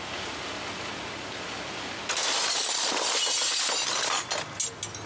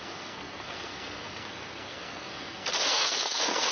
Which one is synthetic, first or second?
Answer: second